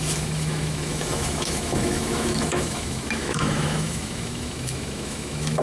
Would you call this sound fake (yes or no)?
yes